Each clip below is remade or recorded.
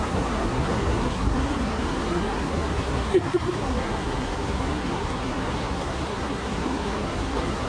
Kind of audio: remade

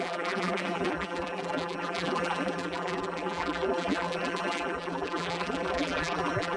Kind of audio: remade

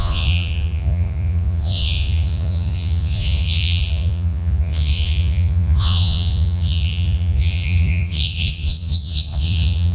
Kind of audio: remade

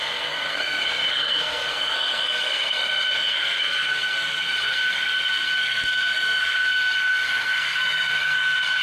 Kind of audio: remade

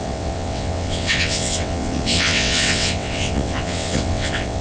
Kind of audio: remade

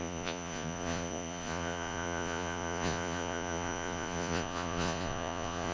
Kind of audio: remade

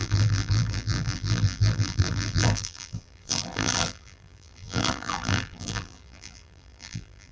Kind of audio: remade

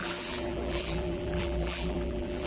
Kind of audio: remade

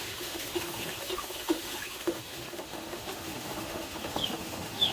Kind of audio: remade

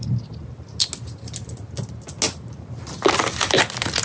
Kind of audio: recorded